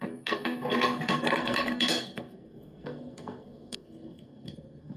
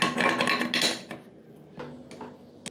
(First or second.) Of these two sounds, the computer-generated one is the first